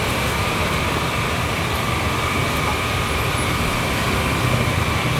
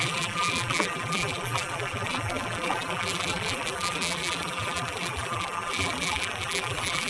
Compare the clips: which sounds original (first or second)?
first